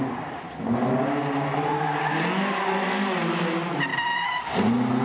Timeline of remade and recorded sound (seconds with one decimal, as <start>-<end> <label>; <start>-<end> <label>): 0.0-3.9 recorded; 3.9-4.5 remade; 4.5-5.0 recorded